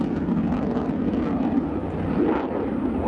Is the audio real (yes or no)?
yes